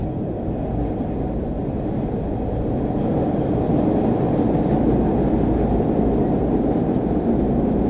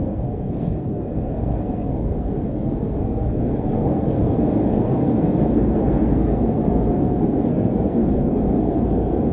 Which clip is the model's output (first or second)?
second